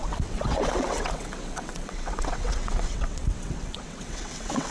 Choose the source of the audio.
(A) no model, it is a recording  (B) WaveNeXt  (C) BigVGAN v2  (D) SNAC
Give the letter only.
B